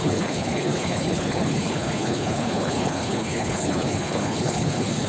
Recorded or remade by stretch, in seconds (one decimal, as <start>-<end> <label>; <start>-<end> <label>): 0.0-5.1 remade